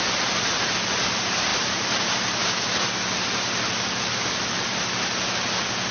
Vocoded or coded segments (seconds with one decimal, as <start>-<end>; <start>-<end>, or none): none